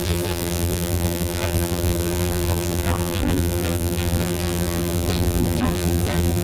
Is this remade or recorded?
remade